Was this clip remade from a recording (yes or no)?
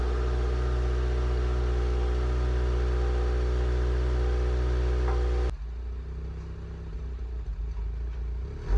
no